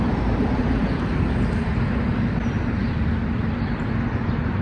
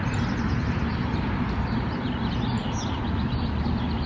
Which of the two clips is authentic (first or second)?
first